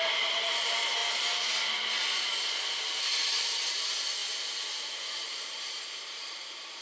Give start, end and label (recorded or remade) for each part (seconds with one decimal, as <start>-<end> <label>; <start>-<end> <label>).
0.0-1.0 remade; 1.0-3.0 recorded; 3.0-6.8 remade